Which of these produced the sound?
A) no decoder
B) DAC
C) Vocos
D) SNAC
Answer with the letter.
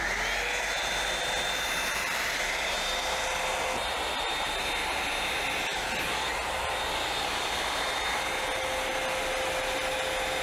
A